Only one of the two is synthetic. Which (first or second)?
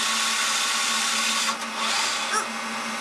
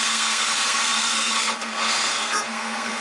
second